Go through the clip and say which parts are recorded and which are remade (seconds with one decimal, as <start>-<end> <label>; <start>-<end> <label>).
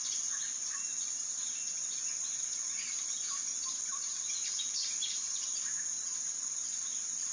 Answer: 0.0-3.9 recorded; 3.9-6.7 remade; 6.7-7.3 recorded